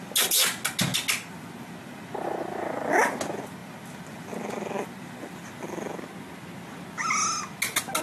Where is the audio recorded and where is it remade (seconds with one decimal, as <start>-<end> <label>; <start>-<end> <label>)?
0.0-8.0 recorded